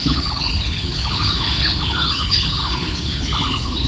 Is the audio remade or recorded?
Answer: remade